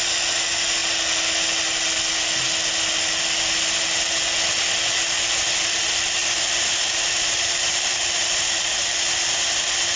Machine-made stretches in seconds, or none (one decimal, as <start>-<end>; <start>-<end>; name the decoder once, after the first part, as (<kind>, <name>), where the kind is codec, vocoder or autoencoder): 6.2-9.1 (vocoder, BigVGAN v2)